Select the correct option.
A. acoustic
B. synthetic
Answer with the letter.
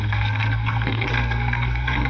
B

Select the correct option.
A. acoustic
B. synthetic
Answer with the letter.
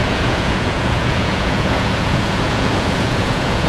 B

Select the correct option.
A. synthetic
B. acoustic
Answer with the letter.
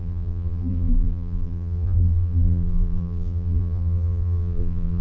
A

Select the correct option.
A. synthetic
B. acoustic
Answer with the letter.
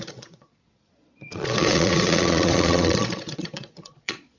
A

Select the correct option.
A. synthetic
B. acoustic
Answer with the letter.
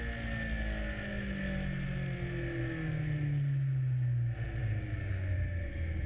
B